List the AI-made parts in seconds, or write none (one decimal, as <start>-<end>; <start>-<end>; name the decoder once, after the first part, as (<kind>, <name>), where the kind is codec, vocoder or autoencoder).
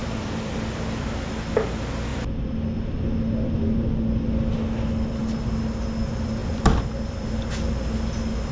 0.0-1.3 (vocoder, BigVGAN v2); 6.4-7.3